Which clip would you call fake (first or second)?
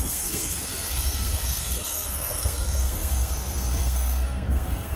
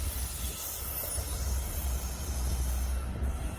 first